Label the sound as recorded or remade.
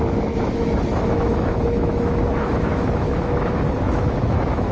remade